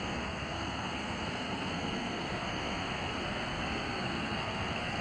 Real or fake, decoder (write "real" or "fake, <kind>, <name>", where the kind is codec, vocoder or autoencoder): fake, codec, SNAC